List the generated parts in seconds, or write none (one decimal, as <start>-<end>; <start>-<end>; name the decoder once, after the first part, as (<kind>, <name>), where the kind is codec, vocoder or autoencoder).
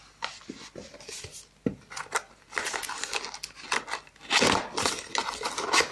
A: none